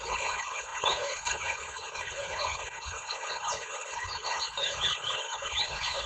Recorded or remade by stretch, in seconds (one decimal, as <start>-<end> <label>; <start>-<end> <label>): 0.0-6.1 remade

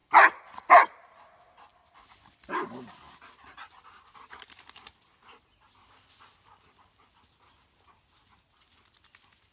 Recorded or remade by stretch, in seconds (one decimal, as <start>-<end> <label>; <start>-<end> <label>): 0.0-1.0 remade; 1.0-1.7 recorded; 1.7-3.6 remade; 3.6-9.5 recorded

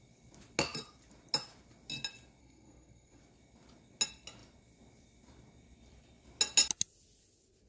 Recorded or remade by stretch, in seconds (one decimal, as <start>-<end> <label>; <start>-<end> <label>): 0.0-2.4 recorded; 2.4-3.2 remade; 3.2-7.7 recorded

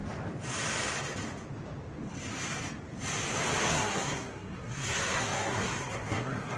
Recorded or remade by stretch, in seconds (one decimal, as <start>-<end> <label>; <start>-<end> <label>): 0.0-3.7 recorded; 3.7-6.6 remade

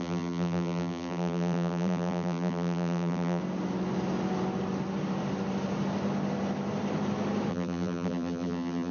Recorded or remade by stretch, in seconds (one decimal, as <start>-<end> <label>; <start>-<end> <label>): 0.0-3.4 remade; 3.4-7.5 recorded; 7.5-8.9 remade

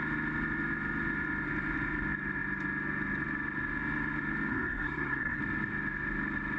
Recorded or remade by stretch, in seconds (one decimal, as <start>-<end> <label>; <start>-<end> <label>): 0.0-4.5 recorded; 4.5-5.4 remade; 5.4-6.6 recorded